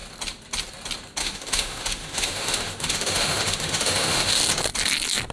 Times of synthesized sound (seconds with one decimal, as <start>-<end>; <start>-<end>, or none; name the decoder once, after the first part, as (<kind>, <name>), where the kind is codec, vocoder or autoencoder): 1.2-4.4 (autoencoder, DAC-VAE)